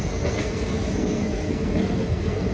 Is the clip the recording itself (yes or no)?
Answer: no